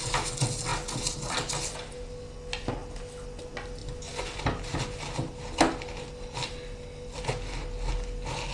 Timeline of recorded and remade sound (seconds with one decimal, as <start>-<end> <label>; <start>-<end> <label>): 0.0-8.5 recorded